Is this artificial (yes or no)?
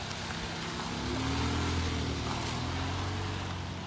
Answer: no